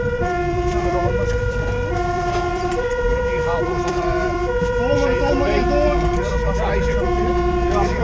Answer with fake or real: fake